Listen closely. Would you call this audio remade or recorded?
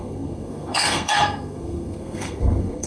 remade